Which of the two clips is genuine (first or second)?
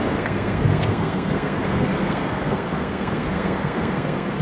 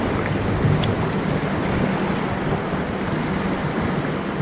second